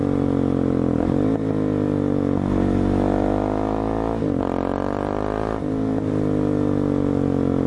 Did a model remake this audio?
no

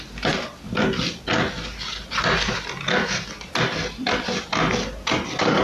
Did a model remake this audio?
no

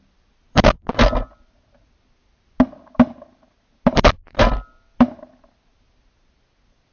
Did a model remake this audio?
no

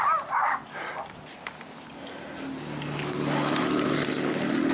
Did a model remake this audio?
no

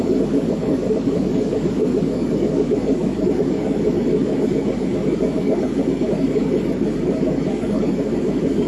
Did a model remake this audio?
yes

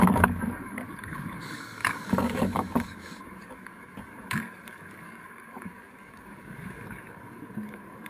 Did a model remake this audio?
yes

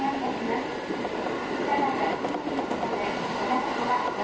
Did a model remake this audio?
no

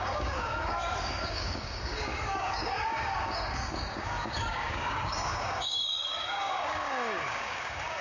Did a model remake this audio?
yes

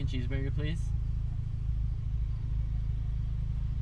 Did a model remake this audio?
no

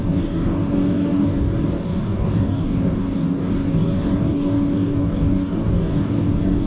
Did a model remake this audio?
yes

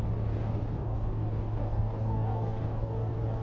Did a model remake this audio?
yes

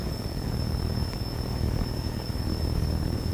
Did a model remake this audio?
yes